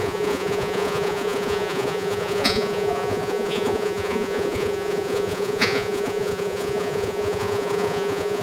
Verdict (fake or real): fake